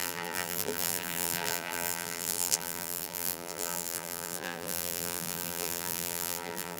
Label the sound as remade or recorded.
remade